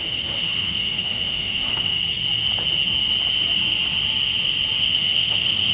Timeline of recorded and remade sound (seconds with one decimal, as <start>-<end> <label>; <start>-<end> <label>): 0.0-2.0 remade; 2.0-4.8 recorded; 4.8-5.7 remade